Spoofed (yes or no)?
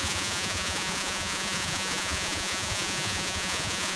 yes